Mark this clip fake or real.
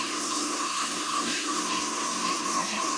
fake